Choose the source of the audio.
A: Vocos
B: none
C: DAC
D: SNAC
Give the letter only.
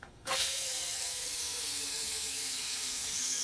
D